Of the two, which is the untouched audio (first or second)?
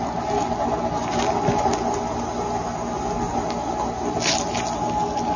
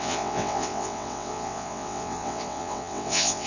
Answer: first